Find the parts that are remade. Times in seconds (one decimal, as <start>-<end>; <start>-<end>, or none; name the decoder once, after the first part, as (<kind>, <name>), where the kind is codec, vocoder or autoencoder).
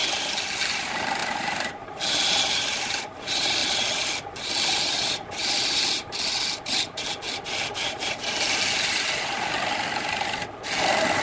1.2-2.0 (vocoder, BigVGAN v2)